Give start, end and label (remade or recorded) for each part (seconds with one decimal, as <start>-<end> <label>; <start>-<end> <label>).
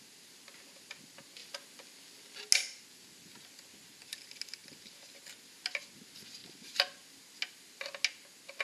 0.0-8.6 recorded